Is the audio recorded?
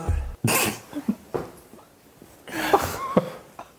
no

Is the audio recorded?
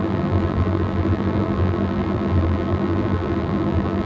no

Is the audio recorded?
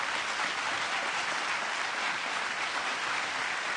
yes